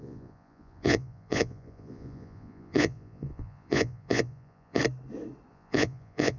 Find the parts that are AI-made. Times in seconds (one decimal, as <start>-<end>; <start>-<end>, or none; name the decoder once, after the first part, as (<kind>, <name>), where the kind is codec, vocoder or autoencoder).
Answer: 0.0-4.8 (vocoder, Vocos); 5.5-6.4